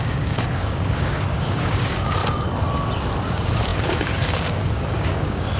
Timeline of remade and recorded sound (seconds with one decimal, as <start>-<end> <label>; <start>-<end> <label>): 0.0-2.2 remade; 2.2-3.3 recorded; 3.3-5.6 remade